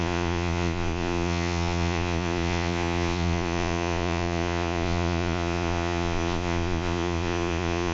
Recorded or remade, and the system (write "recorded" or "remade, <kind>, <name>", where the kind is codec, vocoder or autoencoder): remade, vocoder, Vocos